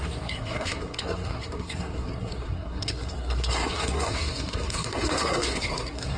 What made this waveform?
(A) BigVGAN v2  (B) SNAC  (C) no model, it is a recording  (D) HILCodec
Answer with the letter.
B